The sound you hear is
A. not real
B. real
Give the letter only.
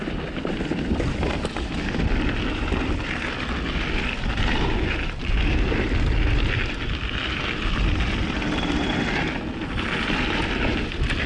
B